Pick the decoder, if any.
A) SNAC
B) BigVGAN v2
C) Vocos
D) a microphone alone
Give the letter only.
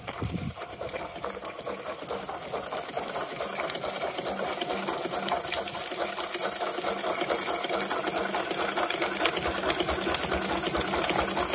D